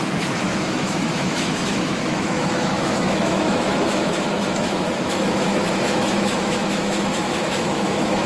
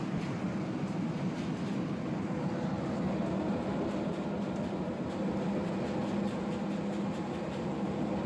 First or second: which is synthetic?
first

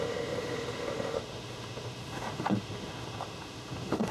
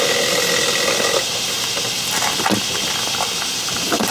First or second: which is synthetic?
first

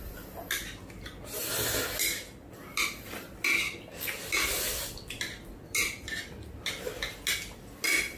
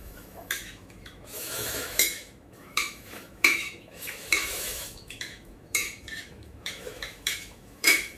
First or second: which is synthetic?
second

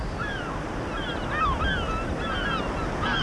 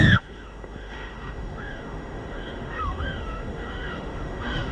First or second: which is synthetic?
second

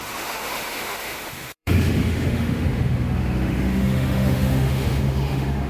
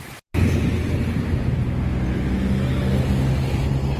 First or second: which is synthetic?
first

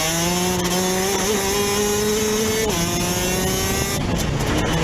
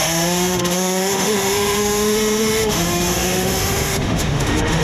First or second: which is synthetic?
second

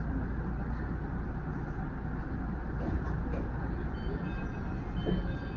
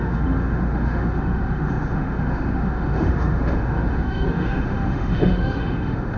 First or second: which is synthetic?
second